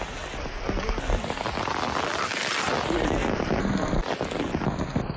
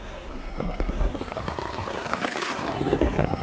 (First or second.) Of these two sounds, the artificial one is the second